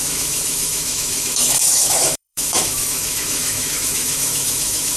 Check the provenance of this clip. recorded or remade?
remade